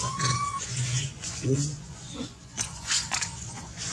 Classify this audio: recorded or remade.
remade